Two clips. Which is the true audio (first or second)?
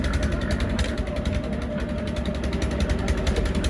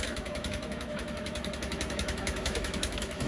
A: first